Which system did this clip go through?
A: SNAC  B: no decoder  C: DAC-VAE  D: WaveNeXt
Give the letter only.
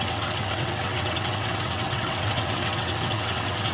D